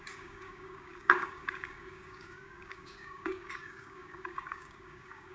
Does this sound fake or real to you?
fake